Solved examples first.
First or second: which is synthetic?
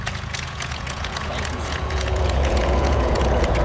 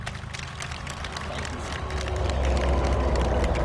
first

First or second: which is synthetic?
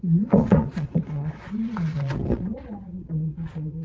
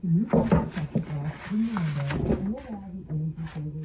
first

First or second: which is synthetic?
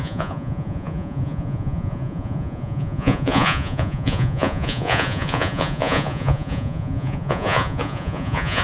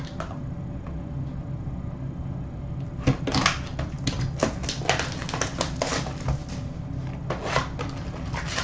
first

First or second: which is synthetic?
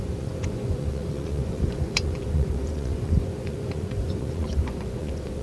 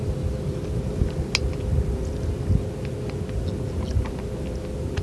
first